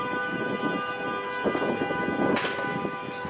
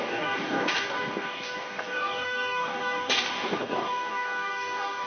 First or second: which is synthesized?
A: second